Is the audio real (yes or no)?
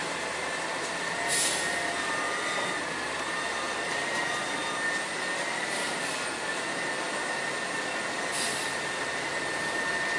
yes